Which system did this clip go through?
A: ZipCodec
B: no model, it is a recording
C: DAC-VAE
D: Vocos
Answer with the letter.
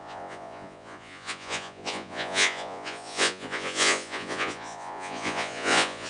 D